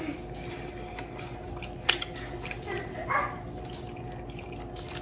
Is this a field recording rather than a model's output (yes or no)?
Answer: yes